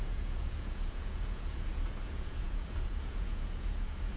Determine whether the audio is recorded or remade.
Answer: remade